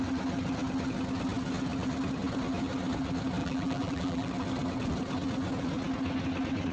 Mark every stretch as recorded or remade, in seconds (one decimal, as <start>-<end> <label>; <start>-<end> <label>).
0.0-3.4 recorded; 3.4-4.3 remade; 4.3-6.7 recorded